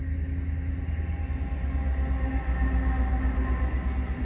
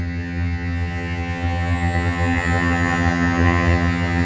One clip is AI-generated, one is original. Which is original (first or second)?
first